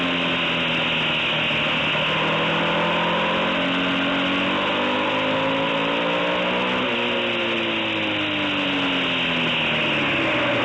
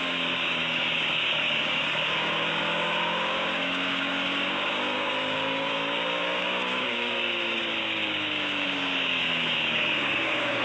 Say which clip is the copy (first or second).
second